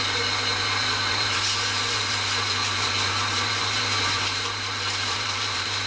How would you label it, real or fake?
fake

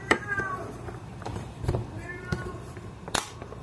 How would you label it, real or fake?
fake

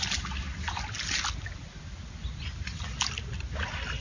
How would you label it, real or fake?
real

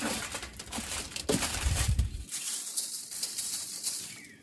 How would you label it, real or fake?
fake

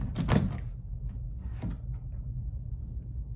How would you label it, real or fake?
real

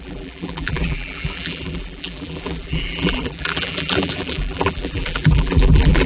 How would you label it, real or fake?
fake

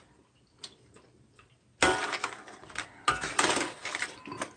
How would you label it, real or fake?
real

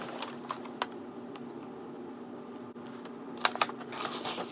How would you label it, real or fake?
real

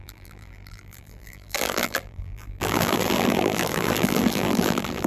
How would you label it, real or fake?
fake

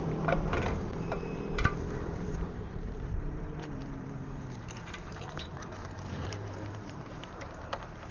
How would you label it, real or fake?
fake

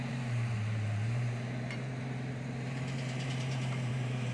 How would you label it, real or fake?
fake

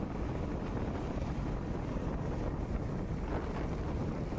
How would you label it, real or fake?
real